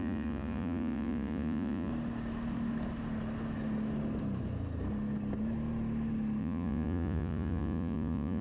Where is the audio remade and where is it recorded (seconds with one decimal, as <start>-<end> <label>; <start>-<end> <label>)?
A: 0.0-1.9 remade; 1.9-6.4 recorded; 6.4-8.4 remade